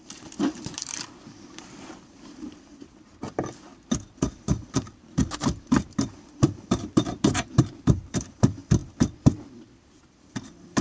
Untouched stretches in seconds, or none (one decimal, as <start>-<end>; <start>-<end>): 3.7-4.3